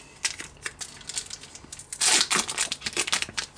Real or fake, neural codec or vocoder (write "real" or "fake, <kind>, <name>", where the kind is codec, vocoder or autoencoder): real